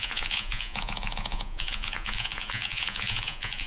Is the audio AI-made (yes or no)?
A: yes